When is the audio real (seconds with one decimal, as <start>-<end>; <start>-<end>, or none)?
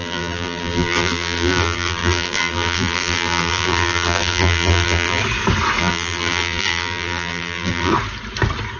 5.2-5.8; 7.9-8.8